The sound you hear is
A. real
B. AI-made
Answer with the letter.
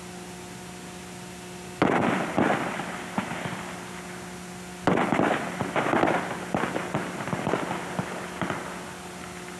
A